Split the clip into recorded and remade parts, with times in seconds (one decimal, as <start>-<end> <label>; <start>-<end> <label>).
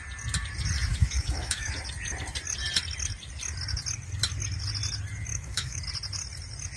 0.0-0.9 recorded; 0.9-1.7 remade; 1.7-5.3 recorded; 5.3-5.8 remade; 5.8-6.8 recorded